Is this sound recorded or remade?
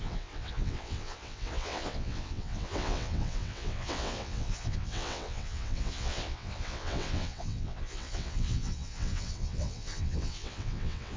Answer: remade